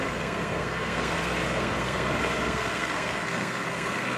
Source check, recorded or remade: remade